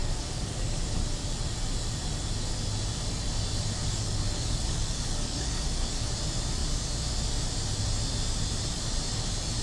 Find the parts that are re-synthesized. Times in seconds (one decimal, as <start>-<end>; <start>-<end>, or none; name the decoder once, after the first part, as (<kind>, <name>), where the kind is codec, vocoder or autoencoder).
0.0-0.8 (codec, DAC); 3.8-6.1